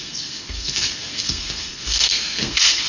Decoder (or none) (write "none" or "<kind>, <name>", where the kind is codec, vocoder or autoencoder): codec, SNAC